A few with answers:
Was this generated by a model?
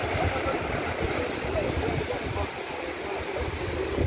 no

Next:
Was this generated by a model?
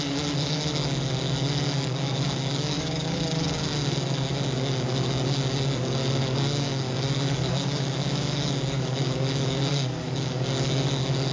yes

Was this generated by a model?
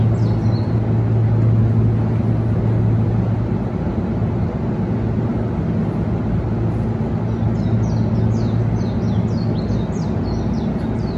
no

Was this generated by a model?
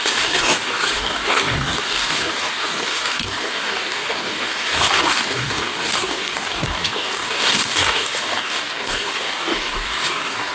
yes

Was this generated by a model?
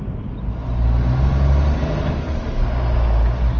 no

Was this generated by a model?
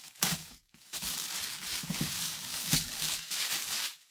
yes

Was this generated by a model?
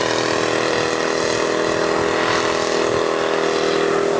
no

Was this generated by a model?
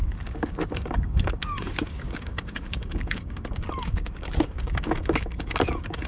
yes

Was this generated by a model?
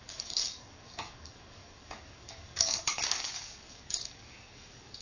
yes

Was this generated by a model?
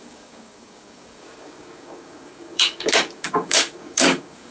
yes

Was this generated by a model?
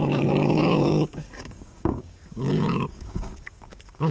yes